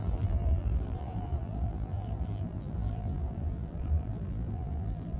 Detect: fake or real fake